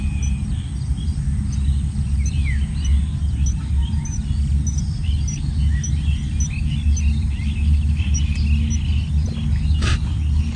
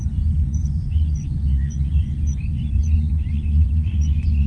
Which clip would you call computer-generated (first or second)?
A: second